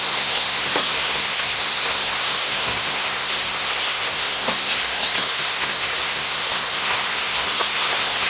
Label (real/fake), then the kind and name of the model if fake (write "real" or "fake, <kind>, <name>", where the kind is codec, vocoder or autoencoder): fake, codec, SNAC